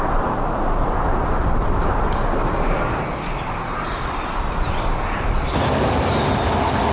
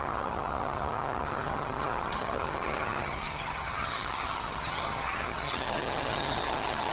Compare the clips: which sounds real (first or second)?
first